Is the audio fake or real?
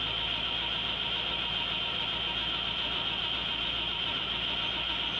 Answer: real